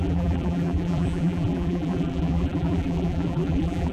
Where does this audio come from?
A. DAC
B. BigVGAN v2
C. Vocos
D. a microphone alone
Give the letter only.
B